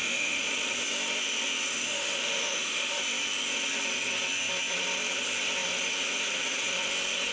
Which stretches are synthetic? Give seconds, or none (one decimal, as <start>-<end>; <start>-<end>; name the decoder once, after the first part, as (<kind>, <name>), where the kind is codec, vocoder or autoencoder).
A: 0.0-0.5 (autoencoder, DAC-VAE); 1.7-3.0